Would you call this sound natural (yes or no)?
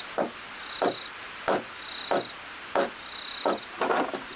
yes